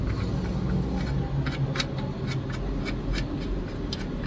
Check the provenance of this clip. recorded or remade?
recorded